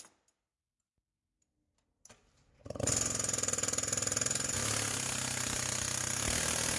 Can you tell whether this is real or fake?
real